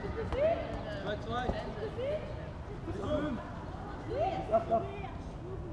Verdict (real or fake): real